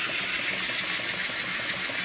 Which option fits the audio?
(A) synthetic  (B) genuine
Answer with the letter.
B